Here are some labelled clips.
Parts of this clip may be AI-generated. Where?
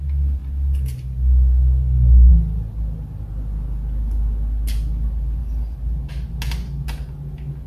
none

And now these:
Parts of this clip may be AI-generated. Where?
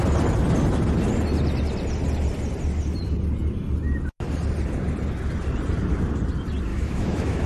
6.7-7.5 (autoencoder, DAC-VAE)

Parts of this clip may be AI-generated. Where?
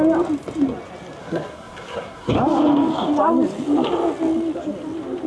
1.2-2.3 (codec, SNAC)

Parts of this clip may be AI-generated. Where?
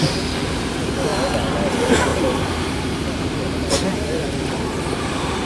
2.1-5.4 (vocoder, BigVGAN v2)